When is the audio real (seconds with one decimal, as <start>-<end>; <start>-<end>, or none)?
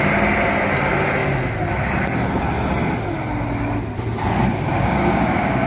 0.0-4.8